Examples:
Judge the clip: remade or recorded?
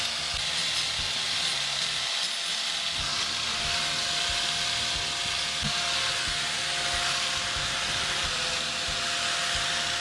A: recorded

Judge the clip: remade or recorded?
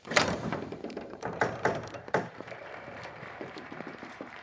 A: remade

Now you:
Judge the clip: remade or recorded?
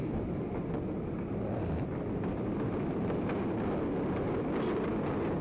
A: recorded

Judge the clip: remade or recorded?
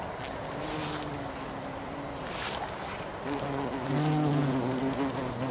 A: recorded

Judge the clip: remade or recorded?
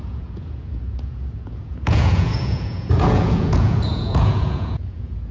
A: remade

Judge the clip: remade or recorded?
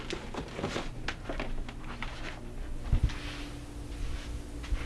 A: recorded